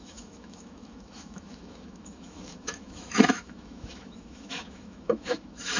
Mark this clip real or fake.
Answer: fake